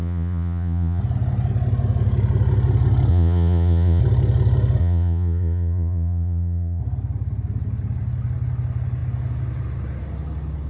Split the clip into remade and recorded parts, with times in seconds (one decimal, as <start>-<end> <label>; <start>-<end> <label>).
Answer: 0.0-1.0 remade; 1.0-3.1 recorded; 3.1-4.0 remade; 4.0-4.8 recorded; 4.8-6.8 remade; 6.8-10.7 recorded